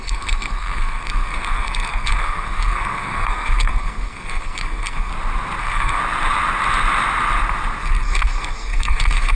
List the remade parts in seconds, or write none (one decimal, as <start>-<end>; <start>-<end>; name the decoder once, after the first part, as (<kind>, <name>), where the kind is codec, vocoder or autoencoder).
0.0-5.1 (codec, SNAC); 5.6-6.0; 7.8-9.4